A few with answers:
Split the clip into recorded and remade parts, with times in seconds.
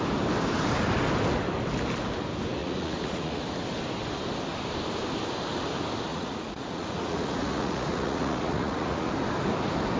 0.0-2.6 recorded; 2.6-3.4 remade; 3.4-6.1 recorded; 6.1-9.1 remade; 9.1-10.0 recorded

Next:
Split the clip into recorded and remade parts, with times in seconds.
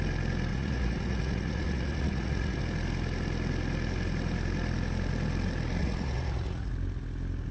0.0-0.5 recorded; 0.5-2.6 remade; 2.6-5.8 recorded; 5.8-6.7 remade; 6.7-7.5 recorded